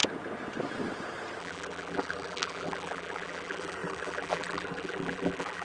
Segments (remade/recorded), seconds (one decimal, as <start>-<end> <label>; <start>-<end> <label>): 0.0-1.4 recorded; 1.4-5.6 remade